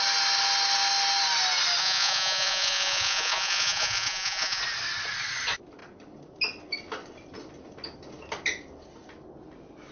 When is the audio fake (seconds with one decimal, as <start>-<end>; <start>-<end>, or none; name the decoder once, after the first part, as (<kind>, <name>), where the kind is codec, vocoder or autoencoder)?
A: 1.8-4.6 (vocoder, Vocos)